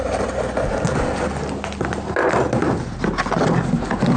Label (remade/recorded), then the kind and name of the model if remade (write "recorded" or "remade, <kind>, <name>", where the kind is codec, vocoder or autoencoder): recorded